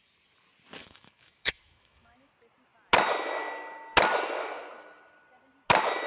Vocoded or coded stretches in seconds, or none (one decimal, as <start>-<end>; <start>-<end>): 0.8-2.3